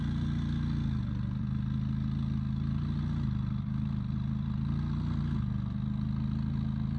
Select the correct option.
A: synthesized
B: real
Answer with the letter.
B